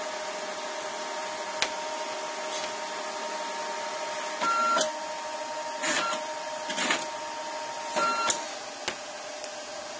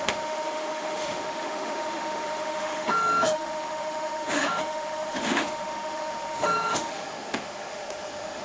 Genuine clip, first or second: first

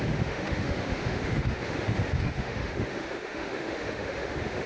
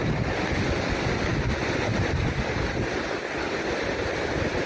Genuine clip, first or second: second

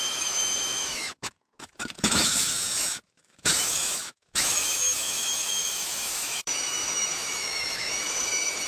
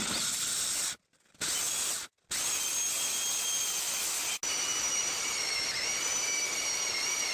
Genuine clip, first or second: second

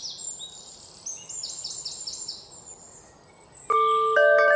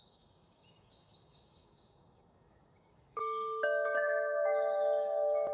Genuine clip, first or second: first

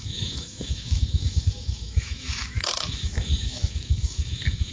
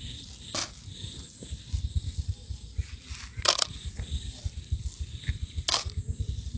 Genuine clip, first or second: second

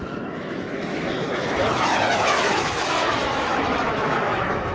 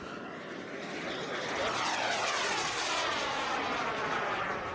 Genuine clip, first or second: second